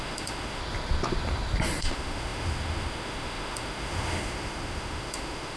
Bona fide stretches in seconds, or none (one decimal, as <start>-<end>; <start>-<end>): 0.6-1.8